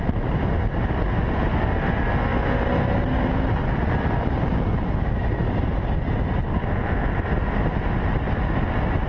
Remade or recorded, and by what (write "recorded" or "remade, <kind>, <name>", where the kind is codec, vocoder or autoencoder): recorded